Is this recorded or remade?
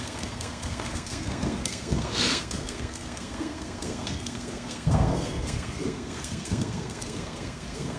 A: remade